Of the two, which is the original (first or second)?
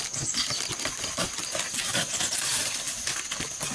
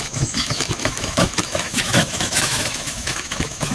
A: first